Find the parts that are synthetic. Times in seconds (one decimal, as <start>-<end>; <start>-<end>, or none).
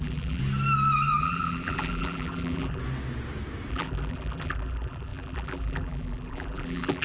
0.0-0.4; 1.2-2.8; 3.7-7.0